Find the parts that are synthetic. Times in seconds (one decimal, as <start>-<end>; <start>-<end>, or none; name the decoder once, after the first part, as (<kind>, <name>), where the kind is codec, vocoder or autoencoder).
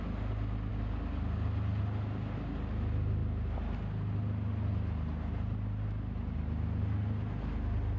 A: none